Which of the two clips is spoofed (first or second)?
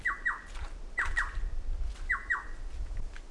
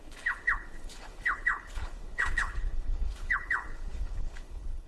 second